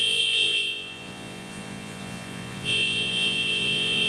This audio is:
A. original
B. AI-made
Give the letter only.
B